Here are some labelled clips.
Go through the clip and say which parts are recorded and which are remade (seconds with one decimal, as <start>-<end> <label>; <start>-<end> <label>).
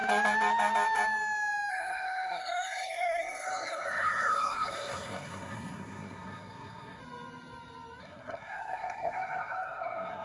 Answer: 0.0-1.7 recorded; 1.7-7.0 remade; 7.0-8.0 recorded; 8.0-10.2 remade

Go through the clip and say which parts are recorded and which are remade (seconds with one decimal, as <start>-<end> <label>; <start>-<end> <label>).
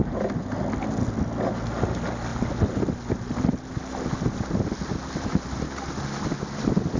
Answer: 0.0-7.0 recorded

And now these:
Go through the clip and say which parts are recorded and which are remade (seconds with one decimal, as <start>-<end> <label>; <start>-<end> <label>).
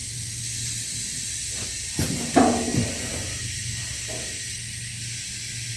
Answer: 0.0-5.8 recorded